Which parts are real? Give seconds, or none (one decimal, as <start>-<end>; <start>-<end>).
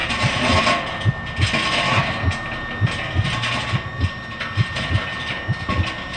0.0-6.2